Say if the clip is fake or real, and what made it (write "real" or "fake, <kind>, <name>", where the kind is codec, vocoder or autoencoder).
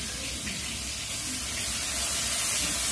real